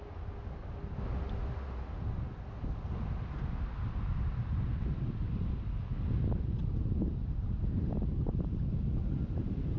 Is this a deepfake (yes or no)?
no